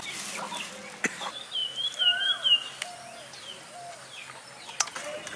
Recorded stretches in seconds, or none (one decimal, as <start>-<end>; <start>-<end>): 0.0-5.4